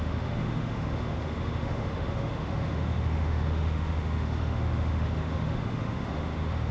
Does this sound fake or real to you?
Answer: fake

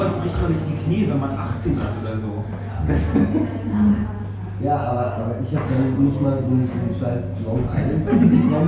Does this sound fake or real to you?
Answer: real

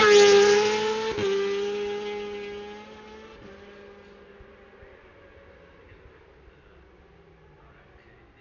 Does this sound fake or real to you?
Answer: real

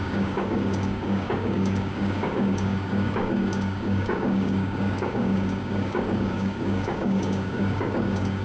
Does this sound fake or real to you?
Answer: fake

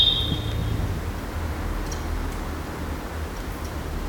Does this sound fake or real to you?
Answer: real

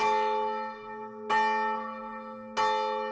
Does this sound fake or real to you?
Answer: real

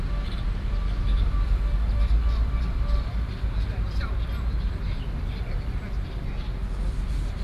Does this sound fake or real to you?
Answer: real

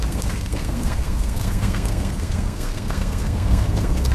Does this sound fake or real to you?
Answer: fake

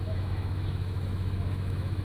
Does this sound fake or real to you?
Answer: fake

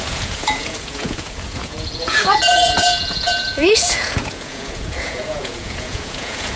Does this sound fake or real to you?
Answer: fake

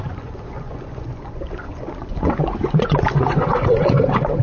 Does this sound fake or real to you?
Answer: fake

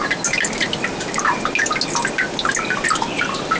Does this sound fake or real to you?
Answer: real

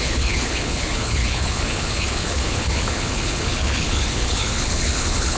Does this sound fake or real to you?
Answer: fake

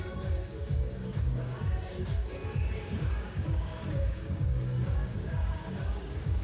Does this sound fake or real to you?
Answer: fake